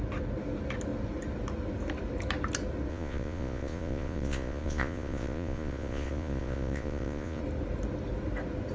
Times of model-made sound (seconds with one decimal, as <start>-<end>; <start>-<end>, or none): 2.9-7.4